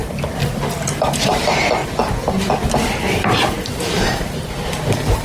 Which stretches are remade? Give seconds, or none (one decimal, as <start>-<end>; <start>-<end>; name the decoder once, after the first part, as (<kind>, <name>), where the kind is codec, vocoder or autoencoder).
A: 0.7-1.8 (vocoder, BigVGAN v2); 2.7-5.2